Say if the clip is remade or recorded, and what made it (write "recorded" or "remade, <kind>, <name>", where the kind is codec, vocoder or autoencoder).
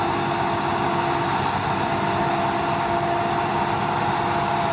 recorded